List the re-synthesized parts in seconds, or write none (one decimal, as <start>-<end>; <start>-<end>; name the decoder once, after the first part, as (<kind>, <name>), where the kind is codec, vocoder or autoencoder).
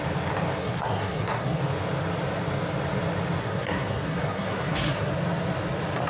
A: 0.6-1.6 (codec, SNAC); 3.4-5.1